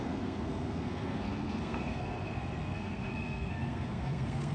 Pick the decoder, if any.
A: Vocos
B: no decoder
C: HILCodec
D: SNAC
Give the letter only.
D